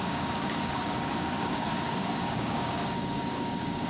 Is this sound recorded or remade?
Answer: remade